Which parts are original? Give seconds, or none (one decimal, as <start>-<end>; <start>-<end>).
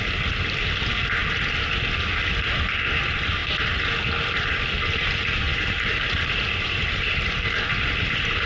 0.0-5.5